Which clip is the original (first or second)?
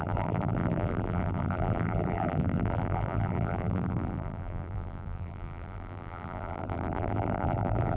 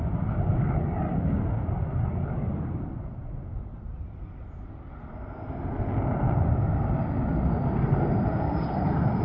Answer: second